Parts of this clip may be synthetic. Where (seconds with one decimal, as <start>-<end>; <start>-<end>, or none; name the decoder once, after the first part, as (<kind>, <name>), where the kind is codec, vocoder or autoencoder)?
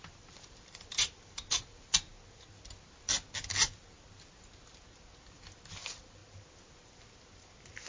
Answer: none